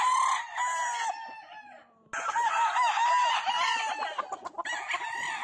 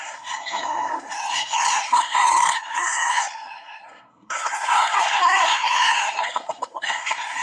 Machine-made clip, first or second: second